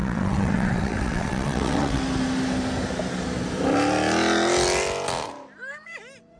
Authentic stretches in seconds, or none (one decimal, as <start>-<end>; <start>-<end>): 2.0-6.4